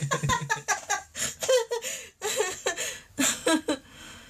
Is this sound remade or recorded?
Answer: recorded